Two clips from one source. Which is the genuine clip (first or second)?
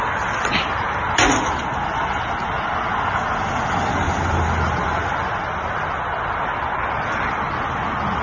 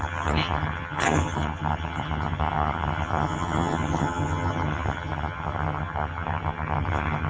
first